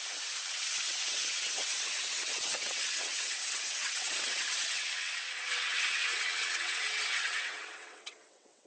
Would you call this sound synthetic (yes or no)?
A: yes